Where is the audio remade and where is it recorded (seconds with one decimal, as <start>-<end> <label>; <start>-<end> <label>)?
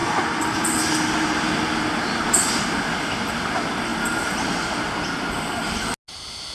0.0-6.5 recorded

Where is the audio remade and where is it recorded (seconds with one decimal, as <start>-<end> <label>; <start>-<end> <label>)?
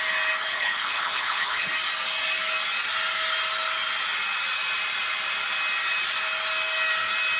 0.0-0.4 recorded; 0.4-1.7 remade; 1.7-7.4 recorded